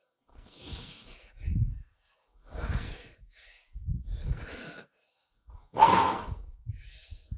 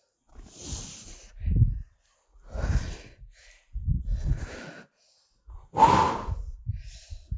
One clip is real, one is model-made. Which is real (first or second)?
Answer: second